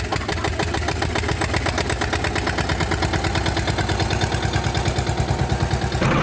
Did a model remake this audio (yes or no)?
no